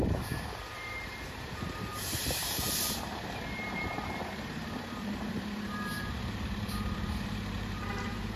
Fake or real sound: fake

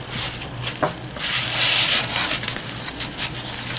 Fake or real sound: real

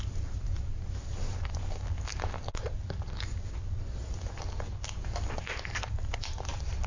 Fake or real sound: real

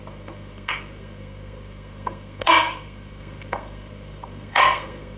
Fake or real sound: fake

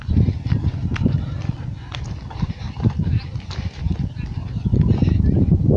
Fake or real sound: real